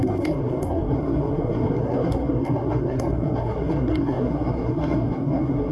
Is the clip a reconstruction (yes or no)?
yes